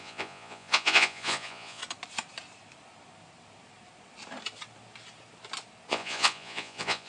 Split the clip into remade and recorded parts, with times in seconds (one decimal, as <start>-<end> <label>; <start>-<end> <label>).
0.0-1.8 remade; 1.8-5.9 recorded; 5.9-7.1 remade